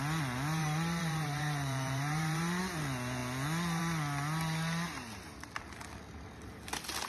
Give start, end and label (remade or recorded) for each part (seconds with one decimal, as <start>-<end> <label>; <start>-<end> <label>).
0.0-0.6 recorded; 0.6-2.6 remade; 2.6-7.1 recorded